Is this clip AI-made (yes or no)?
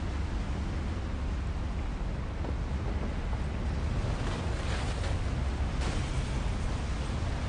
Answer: no